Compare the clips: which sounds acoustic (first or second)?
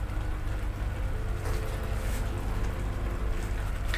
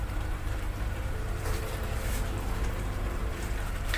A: first